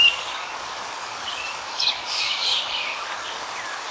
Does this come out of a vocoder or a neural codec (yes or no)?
yes